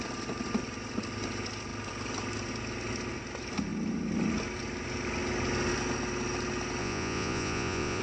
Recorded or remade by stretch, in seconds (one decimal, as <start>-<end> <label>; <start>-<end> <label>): 0.0-6.8 recorded; 6.8-8.0 remade